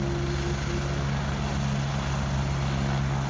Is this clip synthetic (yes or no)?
no